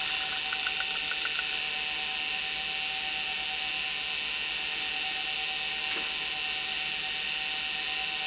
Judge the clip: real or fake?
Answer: real